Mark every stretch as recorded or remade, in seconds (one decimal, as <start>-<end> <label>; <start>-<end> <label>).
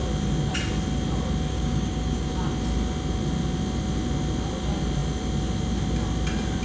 0.0-1.5 recorded; 1.5-2.3 remade; 2.3-6.6 recorded